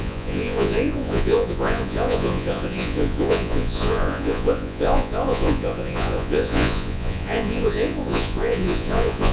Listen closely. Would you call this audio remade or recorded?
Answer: remade